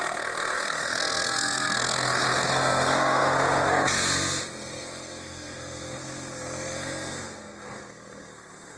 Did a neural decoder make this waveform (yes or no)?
yes